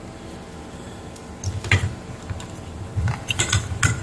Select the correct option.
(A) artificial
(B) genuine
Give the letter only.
B